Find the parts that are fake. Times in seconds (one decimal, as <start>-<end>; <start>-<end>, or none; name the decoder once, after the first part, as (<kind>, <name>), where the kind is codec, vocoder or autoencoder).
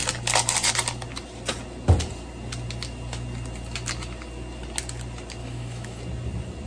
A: 5.4-6.0 (autoencoder, DAC-VAE)